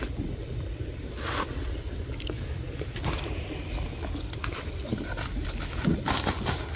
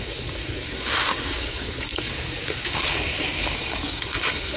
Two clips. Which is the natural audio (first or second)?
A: first